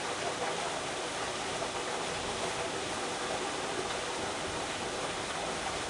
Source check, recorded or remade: recorded